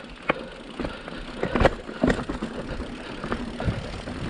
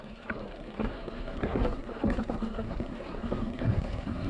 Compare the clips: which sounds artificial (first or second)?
second